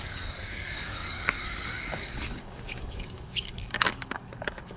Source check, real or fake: fake